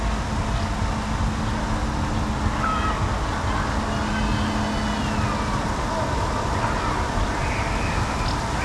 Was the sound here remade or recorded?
recorded